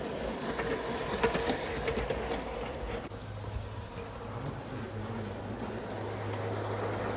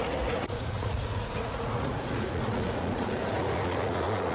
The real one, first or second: first